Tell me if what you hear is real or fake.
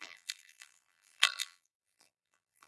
fake